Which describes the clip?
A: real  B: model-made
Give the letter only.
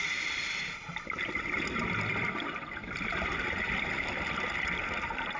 A